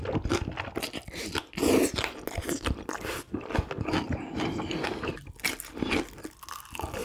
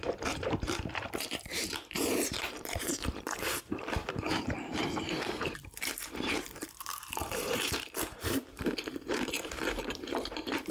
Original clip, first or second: first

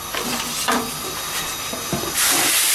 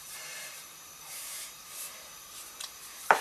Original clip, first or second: first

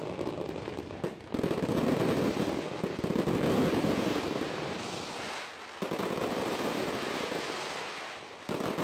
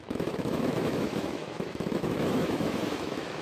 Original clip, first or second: first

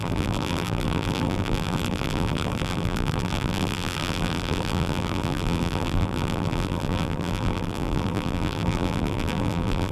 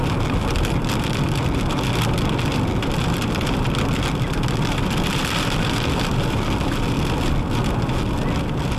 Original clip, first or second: second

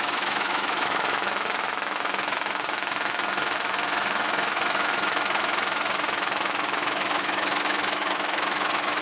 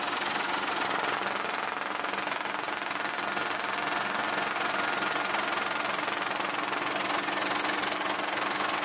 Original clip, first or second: second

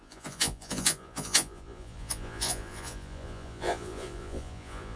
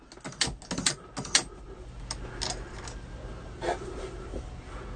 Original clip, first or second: second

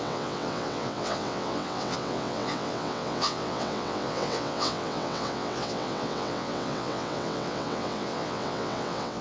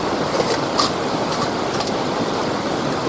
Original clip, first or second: second